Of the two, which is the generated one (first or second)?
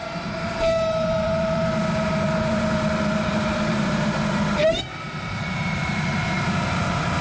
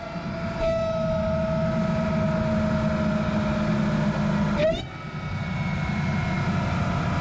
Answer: first